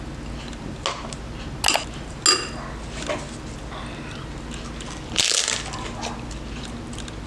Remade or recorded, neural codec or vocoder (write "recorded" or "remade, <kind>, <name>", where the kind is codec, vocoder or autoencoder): recorded